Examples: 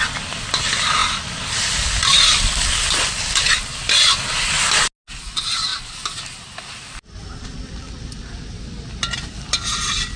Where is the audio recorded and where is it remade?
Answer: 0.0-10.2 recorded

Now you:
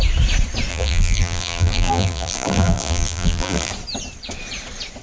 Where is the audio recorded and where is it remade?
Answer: 0.0-0.7 recorded; 0.7-3.7 remade; 3.7-5.0 recorded

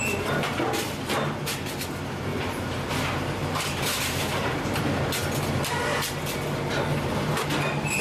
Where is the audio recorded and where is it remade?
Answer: 0.0-2.3 recorded; 2.3-2.9 remade; 2.9-3.4 recorded; 3.4-4.8 remade; 4.8-8.0 recorded

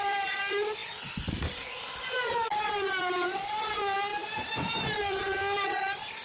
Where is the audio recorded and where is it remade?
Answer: 0.0-6.2 recorded

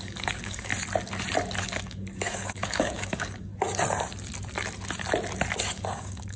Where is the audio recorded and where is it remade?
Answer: 0.0-0.7 remade; 0.7-1.6 recorded; 1.6-3.5 remade; 3.5-5.6 recorded; 5.6-6.4 remade

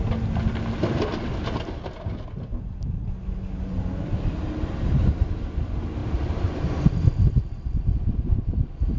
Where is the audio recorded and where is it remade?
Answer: 0.0-9.0 recorded